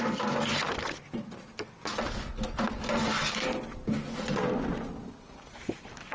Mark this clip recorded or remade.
recorded